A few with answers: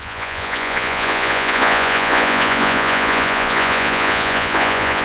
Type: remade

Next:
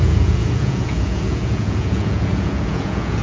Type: remade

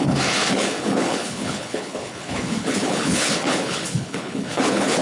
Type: remade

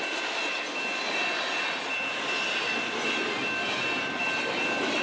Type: recorded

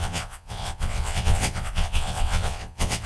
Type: remade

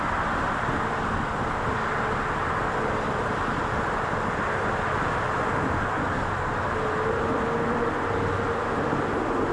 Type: recorded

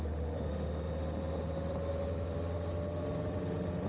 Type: recorded